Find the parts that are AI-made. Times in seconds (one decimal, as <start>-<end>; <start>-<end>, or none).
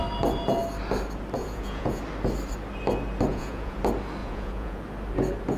1.4-2.0; 3.3-3.8; 4.2-4.8